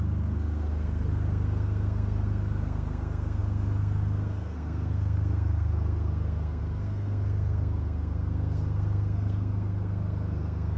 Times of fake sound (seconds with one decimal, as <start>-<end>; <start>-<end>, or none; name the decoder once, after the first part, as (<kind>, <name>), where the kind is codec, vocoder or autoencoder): 0.0-10.8 (codec, SNAC)